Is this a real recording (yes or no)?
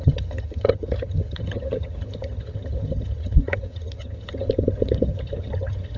no